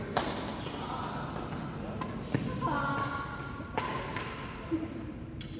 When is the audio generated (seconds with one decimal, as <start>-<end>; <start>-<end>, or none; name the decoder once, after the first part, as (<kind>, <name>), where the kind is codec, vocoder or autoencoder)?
0.0-0.5 (vocoder, BigVGAN v2); 3.9-5.6